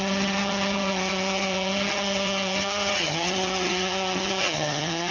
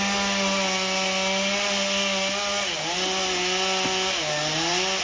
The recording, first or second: second